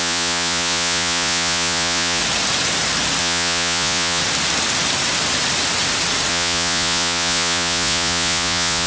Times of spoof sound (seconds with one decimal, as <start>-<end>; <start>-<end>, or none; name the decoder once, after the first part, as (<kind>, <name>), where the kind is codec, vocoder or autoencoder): 0.0-2.2 (vocoder, Vocos); 3.2-4.2; 6.3-8.9